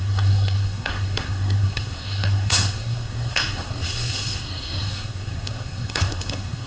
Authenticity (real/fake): fake